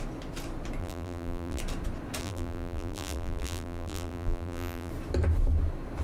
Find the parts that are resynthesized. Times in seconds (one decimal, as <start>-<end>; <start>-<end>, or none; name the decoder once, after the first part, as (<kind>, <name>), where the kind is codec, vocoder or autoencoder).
0.8-1.6 (vocoder, BigVGAN v2); 2.2-4.9